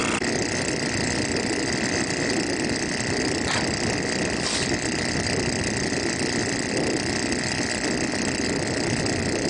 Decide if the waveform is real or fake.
real